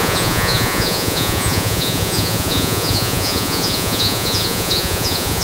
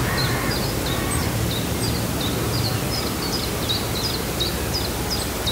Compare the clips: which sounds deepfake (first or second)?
first